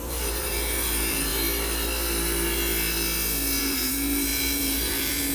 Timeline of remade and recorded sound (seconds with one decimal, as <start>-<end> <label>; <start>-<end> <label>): 0.0-1.3 remade; 1.3-3.6 recorded; 3.6-5.3 remade